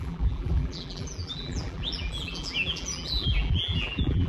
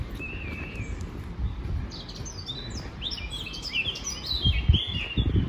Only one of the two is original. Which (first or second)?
second